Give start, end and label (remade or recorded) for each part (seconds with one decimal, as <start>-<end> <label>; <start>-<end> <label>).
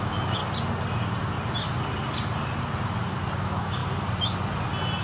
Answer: 0.0-0.4 remade; 0.4-3.4 recorded; 3.4-3.8 remade; 3.8-5.0 recorded